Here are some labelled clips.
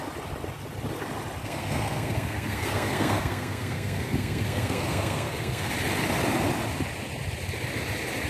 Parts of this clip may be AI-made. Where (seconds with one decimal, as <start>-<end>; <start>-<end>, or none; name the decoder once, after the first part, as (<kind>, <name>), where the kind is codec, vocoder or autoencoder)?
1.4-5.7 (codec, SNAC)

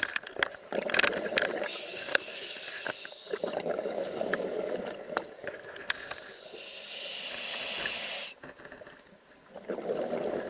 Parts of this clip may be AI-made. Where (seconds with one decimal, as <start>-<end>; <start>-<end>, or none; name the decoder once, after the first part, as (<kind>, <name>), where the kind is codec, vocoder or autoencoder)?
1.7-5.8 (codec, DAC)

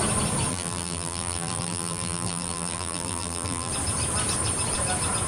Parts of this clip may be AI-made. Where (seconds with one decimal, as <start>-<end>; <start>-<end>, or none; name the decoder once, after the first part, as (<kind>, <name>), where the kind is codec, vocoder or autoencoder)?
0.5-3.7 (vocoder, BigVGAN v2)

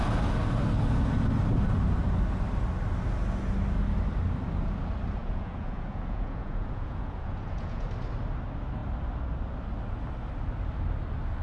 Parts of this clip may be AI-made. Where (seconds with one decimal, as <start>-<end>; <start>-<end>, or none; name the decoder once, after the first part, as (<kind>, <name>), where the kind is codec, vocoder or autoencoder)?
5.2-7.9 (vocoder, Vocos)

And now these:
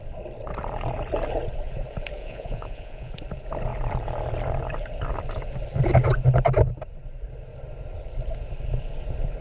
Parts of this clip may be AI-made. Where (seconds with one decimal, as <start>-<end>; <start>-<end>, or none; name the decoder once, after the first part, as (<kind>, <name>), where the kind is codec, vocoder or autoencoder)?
2.2-3.1 (vocoder, Vocos)

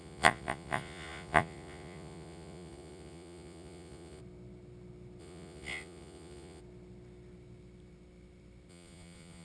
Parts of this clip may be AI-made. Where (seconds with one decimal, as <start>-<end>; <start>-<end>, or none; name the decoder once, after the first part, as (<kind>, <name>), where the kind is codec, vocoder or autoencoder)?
0.0-4.2 (vocoder, Vocos); 5.2-6.6; 8.7-9.4

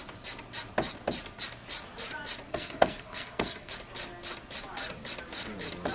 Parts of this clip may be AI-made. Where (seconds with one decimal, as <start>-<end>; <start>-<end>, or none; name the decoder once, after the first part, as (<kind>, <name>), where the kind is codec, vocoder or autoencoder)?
2.5-3.7 (codec, SNAC)